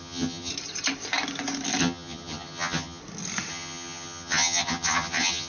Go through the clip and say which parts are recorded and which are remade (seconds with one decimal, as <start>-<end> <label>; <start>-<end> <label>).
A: 0.0-0.5 remade; 0.5-1.8 recorded; 1.8-3.0 remade; 3.0-3.5 recorded; 3.5-5.5 remade

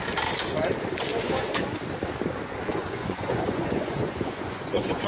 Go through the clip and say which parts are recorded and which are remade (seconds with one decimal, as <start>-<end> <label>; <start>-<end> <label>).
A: 0.0-1.1 recorded; 1.1-1.7 remade; 1.7-2.7 recorded; 2.7-5.1 remade

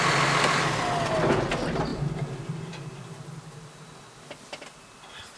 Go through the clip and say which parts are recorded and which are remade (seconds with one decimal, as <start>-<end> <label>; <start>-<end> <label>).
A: 0.0-5.4 recorded

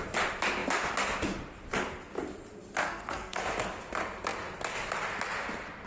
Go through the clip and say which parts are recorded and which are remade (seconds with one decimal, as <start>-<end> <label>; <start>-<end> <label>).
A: 0.0-2.8 recorded; 2.8-3.4 remade; 3.4-5.9 recorded

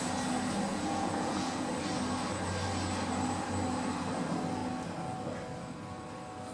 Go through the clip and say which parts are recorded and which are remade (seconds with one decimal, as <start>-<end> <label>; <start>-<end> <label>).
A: 0.0-0.7 recorded; 0.7-1.7 remade; 1.7-6.5 recorded

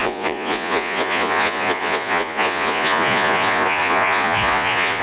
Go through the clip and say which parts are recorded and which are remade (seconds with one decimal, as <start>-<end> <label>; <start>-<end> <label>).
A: 0.0-5.0 remade

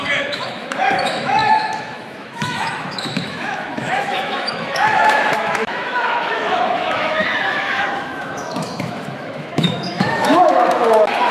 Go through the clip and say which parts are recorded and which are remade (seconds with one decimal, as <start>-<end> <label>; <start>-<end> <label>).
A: 0.0-11.3 remade

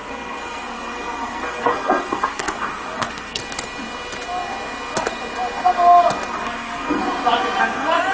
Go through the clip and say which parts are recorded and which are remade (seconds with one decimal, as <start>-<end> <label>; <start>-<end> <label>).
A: 0.0-3.4 remade; 3.4-6.3 recorded; 6.3-7.0 remade; 7.0-7.6 recorded; 7.6-8.1 remade